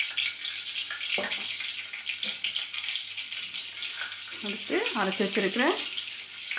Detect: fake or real real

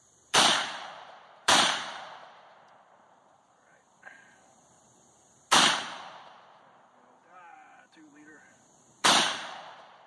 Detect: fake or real fake